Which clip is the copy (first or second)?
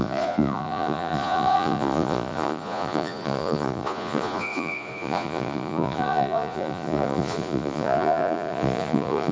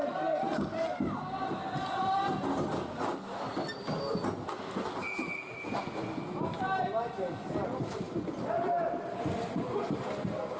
first